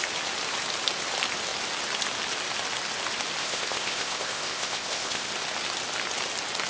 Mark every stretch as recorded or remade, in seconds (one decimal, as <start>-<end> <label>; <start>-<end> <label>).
0.0-3.4 recorded; 3.4-5.3 remade; 5.3-6.7 recorded